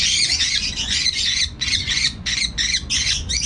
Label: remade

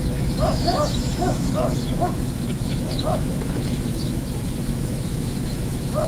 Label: remade